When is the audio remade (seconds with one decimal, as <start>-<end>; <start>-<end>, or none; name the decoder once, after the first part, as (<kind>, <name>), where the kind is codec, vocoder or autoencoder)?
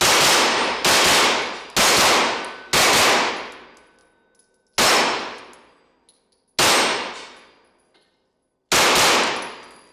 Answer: none